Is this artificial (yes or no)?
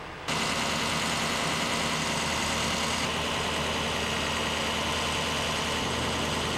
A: no